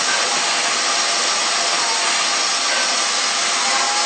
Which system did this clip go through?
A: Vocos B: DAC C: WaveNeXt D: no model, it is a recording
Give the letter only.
D